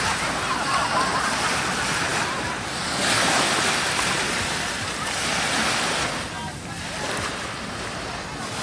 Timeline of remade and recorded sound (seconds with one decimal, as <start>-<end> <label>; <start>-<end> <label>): 0.0-8.6 recorded